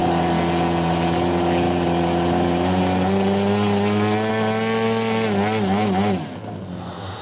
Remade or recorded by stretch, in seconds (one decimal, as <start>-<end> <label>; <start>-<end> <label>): 0.0-7.2 recorded